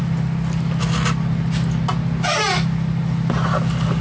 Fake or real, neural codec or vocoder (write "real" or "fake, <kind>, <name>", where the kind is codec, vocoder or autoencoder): real